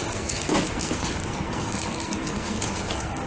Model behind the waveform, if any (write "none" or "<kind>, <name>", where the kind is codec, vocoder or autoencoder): codec, SNAC